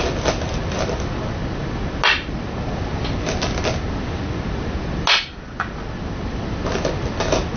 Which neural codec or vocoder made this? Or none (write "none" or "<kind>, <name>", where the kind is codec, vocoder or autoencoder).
none